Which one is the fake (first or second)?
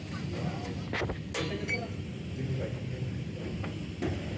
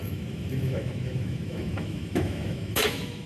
second